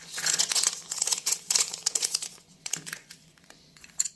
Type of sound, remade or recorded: remade